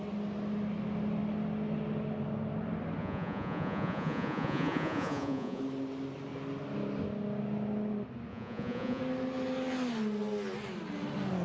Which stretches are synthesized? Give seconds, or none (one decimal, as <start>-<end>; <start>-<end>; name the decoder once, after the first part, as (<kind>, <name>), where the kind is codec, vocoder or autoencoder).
3.0-5.6 (vocoder, Vocos); 8.3-9.0